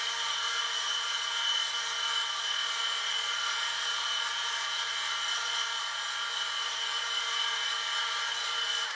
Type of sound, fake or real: fake